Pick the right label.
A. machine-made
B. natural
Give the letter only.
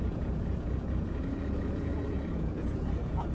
A